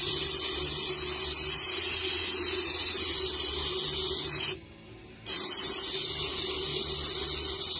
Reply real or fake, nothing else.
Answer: real